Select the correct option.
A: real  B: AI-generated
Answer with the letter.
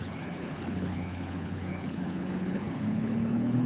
B